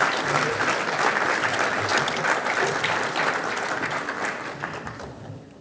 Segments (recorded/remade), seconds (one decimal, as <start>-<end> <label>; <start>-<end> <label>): 0.0-5.6 recorded